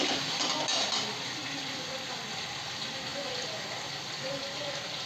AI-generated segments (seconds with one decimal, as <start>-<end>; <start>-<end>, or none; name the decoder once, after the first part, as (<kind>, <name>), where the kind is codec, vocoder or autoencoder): none